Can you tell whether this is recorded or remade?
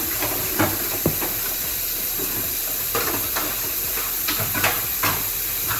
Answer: recorded